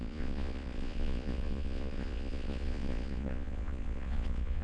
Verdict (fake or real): fake